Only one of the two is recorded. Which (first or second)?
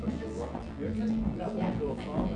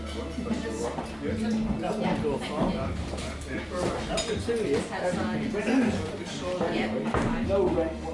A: second